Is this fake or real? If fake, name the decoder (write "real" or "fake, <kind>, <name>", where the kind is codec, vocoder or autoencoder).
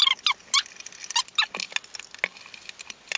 real